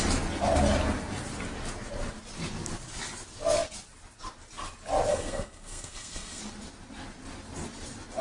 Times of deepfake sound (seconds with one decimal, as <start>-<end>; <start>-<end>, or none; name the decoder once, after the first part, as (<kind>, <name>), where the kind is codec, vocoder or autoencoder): 5.1-6.4 (codec, SNAC)